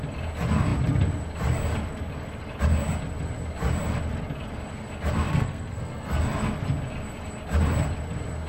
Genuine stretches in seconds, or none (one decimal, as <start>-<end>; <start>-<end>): 0.0-5.3; 6.2-8.5